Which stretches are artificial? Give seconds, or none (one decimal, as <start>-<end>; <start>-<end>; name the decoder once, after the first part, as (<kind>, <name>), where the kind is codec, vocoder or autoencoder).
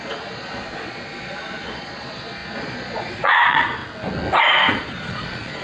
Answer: 0.0-3.8 (vocoder, Vocos); 4.7-5.6